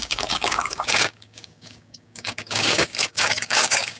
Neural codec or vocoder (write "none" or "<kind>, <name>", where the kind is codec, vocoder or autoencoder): codec, DAC